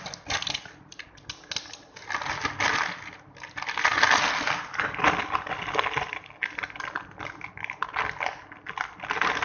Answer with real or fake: real